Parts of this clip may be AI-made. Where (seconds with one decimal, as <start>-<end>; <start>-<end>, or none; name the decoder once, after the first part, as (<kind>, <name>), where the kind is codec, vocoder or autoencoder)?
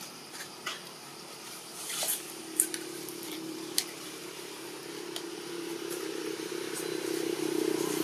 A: 0.0-4.8 (vocoder, BigVGAN v2); 5.3-8.0